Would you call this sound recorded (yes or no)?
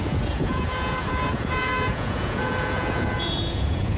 no